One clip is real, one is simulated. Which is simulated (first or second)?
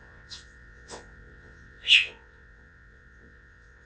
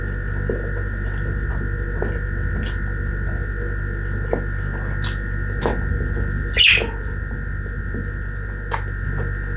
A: first